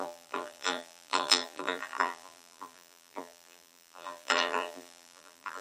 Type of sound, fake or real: fake